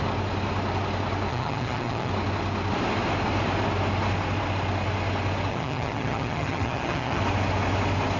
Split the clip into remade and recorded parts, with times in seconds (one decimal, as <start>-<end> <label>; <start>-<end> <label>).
0.0-1.3 recorded; 1.3-2.1 remade; 2.1-5.5 recorded; 5.5-7.2 remade; 7.2-8.2 recorded